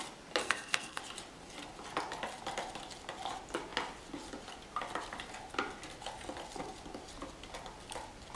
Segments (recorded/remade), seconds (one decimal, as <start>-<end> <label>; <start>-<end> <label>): 0.0-0.4 recorded; 0.4-1.0 remade; 1.0-8.3 recorded